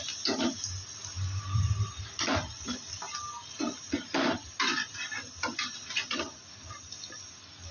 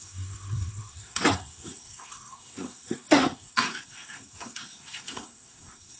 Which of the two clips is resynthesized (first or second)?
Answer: second